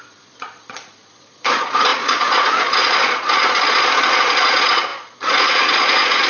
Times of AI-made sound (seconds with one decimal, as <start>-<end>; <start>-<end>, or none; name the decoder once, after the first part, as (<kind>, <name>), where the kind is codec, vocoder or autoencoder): 0.0-6.3 (vocoder, Vocos)